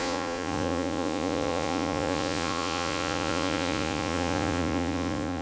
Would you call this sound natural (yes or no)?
no